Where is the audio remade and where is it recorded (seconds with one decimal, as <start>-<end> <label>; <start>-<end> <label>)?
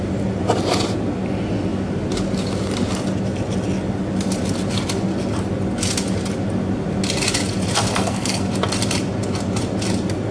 0.0-7.9 recorded; 7.9-8.5 remade; 8.5-10.3 recorded